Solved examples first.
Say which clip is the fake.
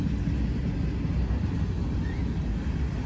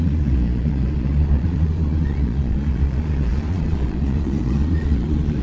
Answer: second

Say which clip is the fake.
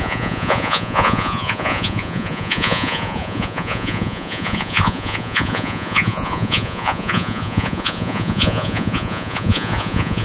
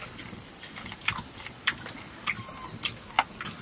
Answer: first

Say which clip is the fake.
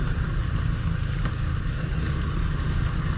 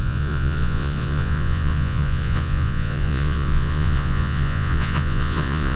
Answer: second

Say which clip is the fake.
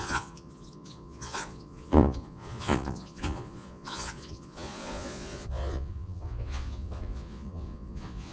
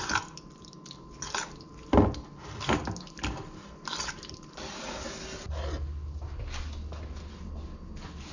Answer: first